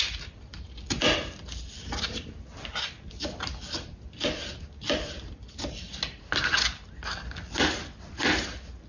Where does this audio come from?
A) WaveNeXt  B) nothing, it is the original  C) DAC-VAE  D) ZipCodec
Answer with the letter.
B